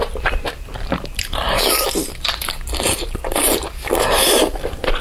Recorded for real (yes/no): no